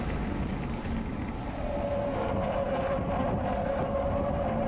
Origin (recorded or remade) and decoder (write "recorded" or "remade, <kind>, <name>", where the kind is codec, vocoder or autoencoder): recorded